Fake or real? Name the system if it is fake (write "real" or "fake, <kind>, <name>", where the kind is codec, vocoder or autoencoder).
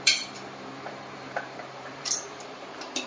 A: fake, vocoder, BigVGAN v2